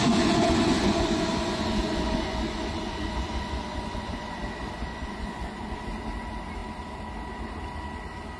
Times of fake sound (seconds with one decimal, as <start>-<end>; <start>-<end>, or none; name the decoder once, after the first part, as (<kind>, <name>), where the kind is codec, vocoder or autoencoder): 0.0-4.4 (vocoder, Vocos); 4.9-5.8